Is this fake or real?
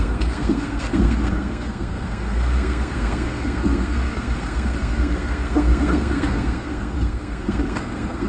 fake